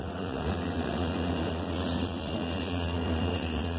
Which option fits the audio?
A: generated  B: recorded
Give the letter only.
A